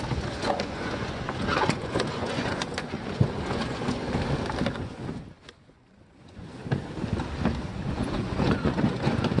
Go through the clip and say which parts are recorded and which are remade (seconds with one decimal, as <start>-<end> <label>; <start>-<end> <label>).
0.0-4.0 remade; 4.0-4.8 recorded; 4.8-6.6 remade; 6.6-7.6 recorded; 7.6-9.4 remade